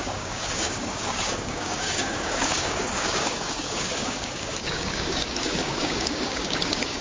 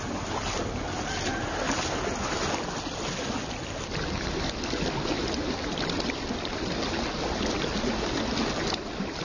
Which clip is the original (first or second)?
second